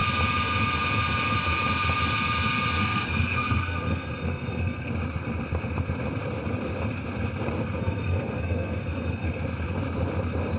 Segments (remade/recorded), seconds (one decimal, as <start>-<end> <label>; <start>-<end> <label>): 0.0-2.8 recorded; 2.8-4.9 remade; 4.9-7.8 recorded; 7.8-9.4 remade; 9.4-10.6 recorded